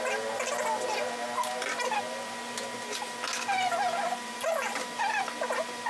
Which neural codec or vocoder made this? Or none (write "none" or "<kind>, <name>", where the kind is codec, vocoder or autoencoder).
none